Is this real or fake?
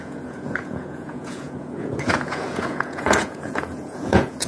fake